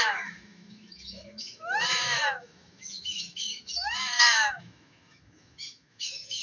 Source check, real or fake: fake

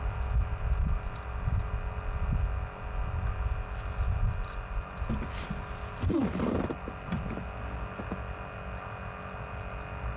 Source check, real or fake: real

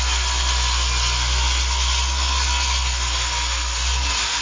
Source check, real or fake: real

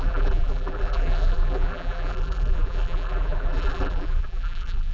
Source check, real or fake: fake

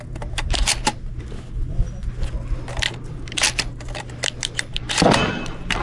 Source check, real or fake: real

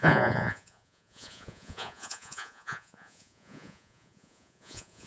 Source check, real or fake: fake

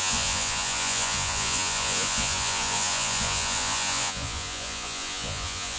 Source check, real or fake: fake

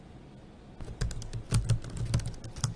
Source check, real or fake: real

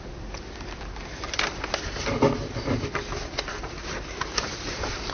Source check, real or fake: real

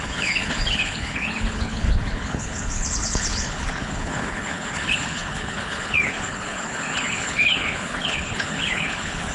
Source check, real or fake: fake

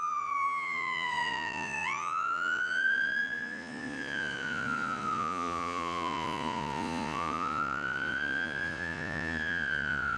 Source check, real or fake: fake